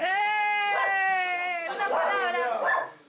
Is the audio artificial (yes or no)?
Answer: no